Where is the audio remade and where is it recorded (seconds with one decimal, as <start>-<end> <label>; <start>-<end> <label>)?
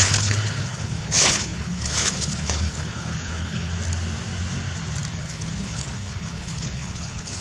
0.0-3.7 remade; 3.7-5.1 recorded; 5.1-7.4 remade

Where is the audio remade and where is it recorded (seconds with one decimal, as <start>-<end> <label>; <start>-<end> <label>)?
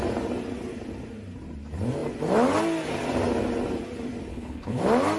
0.0-4.3 recorded; 4.3-4.8 remade; 4.8-5.2 recorded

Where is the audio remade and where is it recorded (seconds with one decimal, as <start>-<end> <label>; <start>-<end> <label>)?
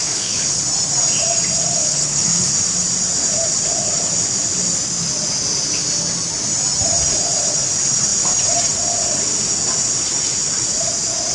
0.0-0.6 remade; 0.6-1.8 recorded; 1.8-2.5 remade; 2.5-11.3 recorded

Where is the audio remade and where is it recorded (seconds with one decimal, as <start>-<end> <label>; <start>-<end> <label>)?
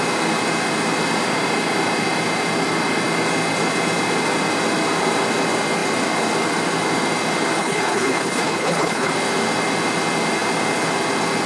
0.0-7.6 recorded; 7.6-9.1 remade; 9.1-11.5 recorded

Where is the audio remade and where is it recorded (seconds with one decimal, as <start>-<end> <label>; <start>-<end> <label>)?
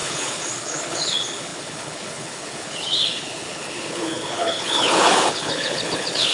0.0-6.3 remade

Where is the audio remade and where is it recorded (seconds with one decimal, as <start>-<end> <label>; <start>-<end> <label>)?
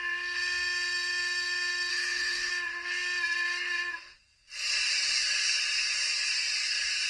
0.0-1.9 recorded; 1.9-2.5 remade; 2.5-7.1 recorded